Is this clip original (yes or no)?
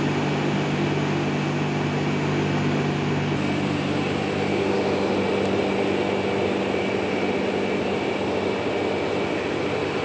yes